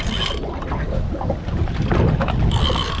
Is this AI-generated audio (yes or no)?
no